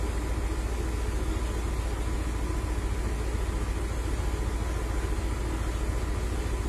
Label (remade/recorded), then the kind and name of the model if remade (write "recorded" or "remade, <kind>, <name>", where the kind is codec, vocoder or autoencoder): recorded